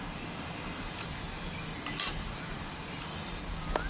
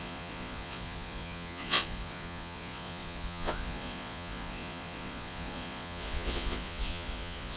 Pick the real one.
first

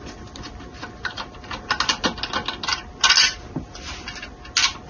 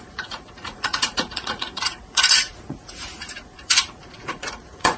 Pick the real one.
first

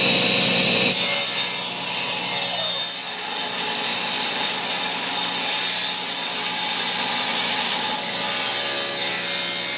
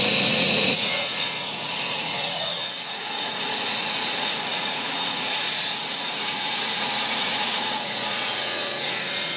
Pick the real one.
first